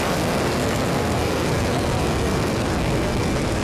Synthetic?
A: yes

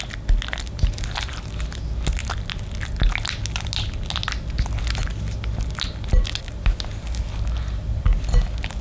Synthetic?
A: no